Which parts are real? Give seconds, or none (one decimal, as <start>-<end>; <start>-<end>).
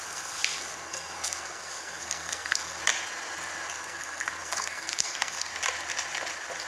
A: 2.8-3.7; 5.5-6.7